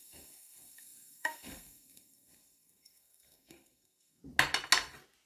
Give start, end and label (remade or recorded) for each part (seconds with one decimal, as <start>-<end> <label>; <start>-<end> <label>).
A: 0.0-4.2 remade; 4.2-5.3 recorded

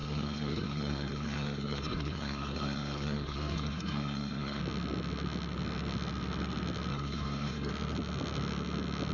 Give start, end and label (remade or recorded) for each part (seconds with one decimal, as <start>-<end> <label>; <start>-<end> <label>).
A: 0.0-4.6 remade; 4.6-6.9 recorded; 6.9-7.7 remade; 7.7-9.1 recorded

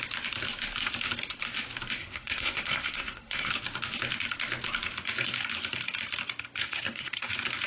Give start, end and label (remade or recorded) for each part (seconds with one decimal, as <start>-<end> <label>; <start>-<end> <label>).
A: 0.0-2.0 recorded; 2.0-3.5 remade; 3.5-6.6 recorded; 6.6-7.3 remade; 7.3-7.7 recorded

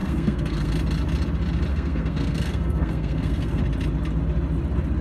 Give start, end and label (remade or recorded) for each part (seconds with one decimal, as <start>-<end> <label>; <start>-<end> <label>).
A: 0.0-0.7 remade; 0.7-1.7 recorded; 1.7-3.6 remade; 3.6-5.0 recorded

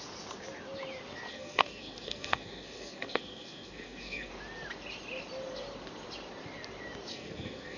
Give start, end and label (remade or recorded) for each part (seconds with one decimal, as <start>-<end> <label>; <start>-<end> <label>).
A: 0.0-1.3 recorded; 1.3-4.3 remade; 4.3-7.1 recorded; 7.1-7.8 remade

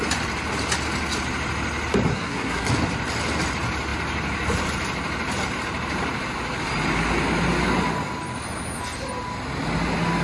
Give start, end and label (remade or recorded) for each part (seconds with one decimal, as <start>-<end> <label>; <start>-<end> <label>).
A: 0.0-2.1 recorded; 2.1-2.7 remade; 2.7-10.2 recorded

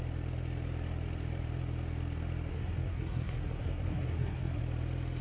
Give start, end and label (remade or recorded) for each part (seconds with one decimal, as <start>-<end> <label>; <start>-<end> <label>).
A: 0.0-2.5 recorded; 2.5-4.6 remade; 4.6-5.2 recorded

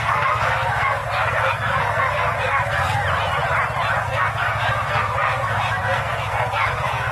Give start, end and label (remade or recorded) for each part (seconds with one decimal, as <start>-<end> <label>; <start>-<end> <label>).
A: 0.0-3.0 remade; 3.0-4.0 recorded; 4.0-7.1 remade